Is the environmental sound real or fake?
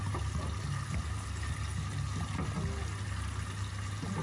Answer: real